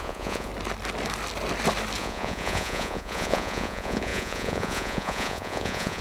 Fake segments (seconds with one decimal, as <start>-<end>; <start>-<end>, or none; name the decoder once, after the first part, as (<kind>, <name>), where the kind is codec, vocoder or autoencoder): 0.0-0.5 (vocoder, Vocos); 2.0-6.0

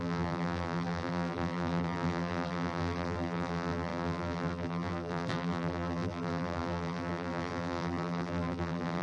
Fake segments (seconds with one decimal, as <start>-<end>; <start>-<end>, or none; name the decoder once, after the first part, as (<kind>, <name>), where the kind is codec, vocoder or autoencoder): 0.0-9.0 (vocoder, BigVGAN v2)